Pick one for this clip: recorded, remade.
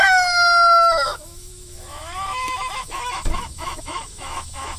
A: remade